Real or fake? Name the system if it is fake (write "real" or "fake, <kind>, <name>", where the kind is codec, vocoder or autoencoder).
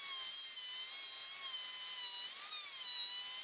real